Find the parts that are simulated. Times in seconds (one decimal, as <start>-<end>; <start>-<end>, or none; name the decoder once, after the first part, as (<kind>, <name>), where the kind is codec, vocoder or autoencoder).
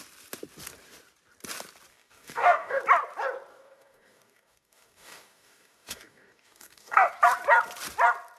1.9-2.8 (codec, DAC); 3.5-7.1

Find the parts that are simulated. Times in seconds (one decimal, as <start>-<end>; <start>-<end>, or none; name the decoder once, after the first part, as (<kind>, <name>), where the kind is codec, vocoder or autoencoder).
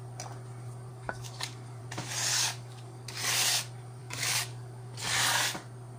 0.9-1.8 (codec, DAC); 2.3-3.2; 4.0-5.0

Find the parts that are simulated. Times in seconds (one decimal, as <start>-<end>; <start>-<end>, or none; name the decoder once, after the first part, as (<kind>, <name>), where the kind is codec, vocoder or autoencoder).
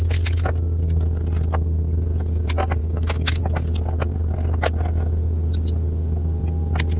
2.8-3.4 (codec, DAC)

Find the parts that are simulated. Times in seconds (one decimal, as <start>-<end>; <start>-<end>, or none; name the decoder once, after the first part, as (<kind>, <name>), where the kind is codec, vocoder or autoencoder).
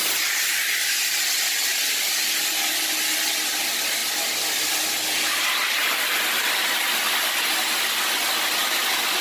none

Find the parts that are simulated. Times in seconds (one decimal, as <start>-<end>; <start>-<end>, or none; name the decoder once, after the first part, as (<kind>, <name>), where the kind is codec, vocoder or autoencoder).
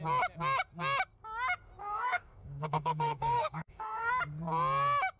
1.8-4.1 (codec, DAC)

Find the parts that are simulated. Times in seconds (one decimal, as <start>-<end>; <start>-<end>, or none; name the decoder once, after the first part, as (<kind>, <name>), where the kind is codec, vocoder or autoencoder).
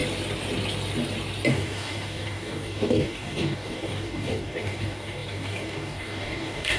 1.5-6.8 (codec, DAC)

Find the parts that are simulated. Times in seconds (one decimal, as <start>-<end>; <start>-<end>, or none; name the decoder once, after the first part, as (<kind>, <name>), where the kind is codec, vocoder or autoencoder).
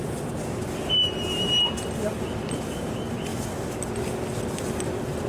none